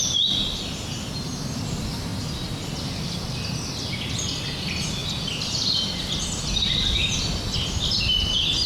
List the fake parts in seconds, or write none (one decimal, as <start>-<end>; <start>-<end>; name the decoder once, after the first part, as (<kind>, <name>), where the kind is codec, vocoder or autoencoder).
none